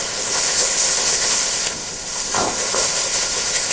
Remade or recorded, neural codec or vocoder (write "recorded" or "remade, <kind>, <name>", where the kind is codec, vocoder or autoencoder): remade, codec, ZipCodec